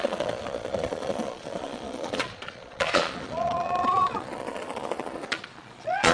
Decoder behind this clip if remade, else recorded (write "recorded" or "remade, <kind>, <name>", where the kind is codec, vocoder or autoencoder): remade, vocoder, Vocos